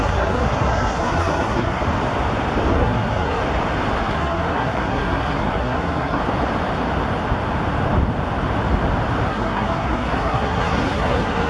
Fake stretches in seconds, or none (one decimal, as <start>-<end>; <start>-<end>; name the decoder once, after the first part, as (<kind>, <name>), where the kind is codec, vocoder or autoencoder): 0.0-1.8 (codec, SNAC); 2.7-3.4; 4.0-6.2; 9.3-11.5